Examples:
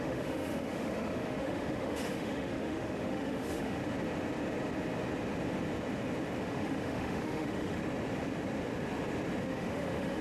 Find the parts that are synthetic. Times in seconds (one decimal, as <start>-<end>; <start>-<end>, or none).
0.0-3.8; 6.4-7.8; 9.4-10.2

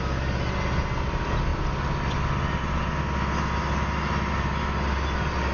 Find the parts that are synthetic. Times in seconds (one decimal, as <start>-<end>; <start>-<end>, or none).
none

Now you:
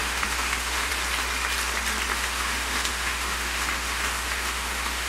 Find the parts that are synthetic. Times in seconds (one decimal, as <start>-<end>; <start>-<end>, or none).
0.0-0.9; 2.1-5.1

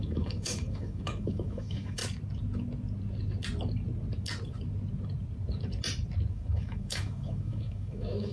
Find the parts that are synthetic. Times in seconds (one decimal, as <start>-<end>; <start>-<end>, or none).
0.0-2.0; 6.3-8.3

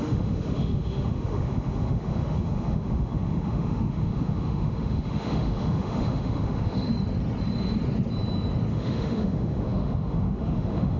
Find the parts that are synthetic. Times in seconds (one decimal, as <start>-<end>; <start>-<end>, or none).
0.0-6.9; 8.7-11.0

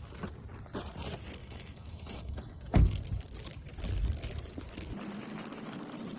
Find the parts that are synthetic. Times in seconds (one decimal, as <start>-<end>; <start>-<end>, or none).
1.4-2.8